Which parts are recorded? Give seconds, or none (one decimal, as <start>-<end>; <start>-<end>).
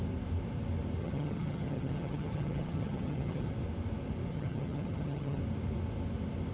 0.0-1.0; 3.5-4.3; 5.4-6.5